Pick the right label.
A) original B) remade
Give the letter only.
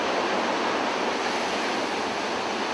A